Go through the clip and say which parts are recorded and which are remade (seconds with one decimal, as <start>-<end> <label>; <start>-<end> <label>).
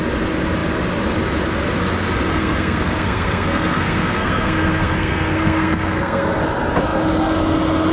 0.0-2.3 recorded; 2.3-6.4 remade; 6.4-7.9 recorded